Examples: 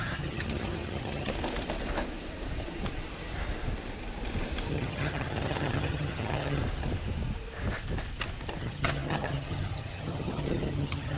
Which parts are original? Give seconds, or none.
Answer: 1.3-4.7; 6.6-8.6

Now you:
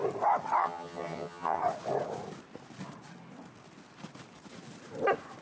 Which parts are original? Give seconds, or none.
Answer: 0.0-0.6; 1.6-5.4

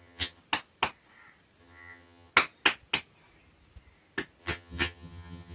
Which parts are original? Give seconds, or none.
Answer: 0.4-1.6; 2.3-4.4

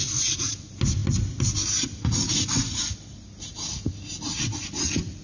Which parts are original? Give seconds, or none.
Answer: 0.0-5.2

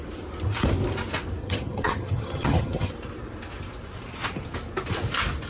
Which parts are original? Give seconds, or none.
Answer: 0.0-1.4; 2.9-5.5

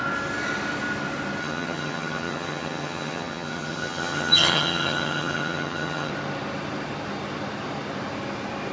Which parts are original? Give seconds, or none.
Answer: 0.0-1.4; 6.1-8.7

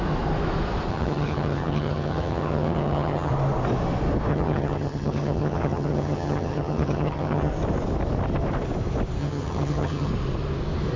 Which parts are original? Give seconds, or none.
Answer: 0.0-0.9; 3.3-4.3; 7.5-9.2; 10.1-11.0

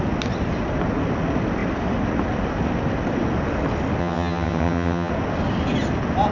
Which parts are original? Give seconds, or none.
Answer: 0.0-4.0; 5.1-6.3